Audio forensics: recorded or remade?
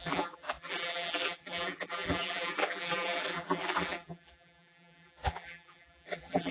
remade